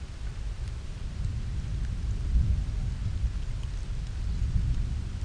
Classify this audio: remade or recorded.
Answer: recorded